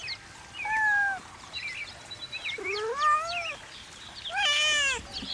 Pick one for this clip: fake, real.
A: real